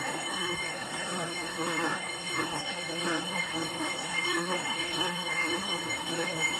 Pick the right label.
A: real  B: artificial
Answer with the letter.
B